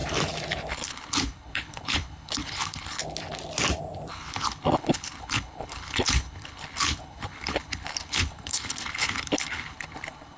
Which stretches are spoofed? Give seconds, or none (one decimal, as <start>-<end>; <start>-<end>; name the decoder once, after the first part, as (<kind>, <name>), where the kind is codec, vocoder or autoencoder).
0.7-3.0 (codec, HILCodec); 4.1-10.4